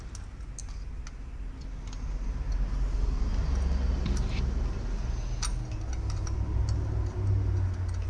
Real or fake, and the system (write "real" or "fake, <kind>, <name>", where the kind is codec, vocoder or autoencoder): real